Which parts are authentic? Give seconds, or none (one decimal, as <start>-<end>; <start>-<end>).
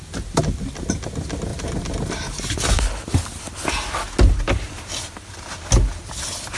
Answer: 0.0-6.6